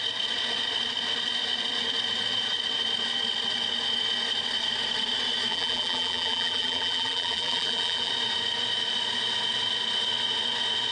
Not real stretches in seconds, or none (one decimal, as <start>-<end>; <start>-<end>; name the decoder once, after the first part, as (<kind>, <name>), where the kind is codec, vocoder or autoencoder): 5.5-8.1 (vocoder, BigVGAN v2)